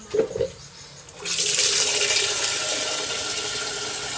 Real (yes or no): yes